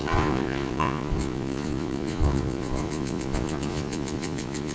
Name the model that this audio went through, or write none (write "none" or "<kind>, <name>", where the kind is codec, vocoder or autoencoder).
vocoder, Vocos